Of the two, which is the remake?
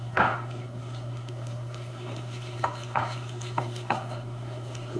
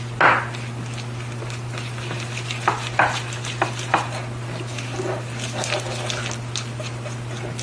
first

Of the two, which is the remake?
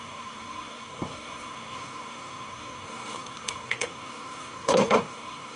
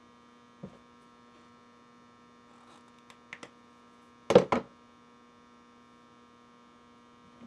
first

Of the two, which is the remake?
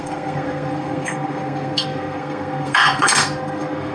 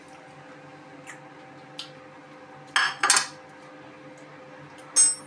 first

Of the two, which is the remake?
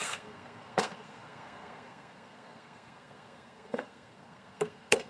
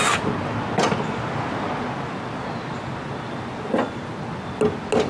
first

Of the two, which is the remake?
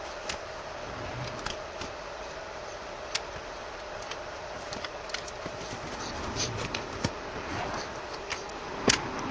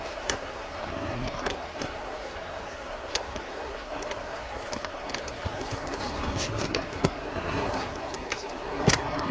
second